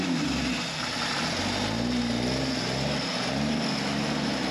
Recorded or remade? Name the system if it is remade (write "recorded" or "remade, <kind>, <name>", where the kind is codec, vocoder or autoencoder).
recorded